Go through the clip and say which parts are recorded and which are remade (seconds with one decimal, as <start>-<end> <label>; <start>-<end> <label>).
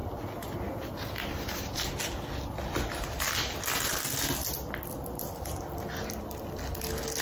0.0-7.2 recorded